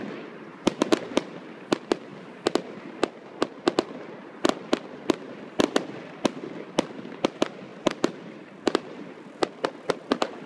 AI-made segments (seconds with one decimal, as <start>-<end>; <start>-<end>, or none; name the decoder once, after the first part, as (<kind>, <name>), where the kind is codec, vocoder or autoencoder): 0.5-1.3 (vocoder, BigVGAN v2); 7.7-9.4